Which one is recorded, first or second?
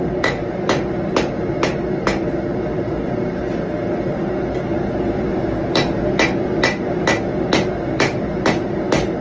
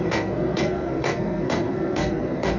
first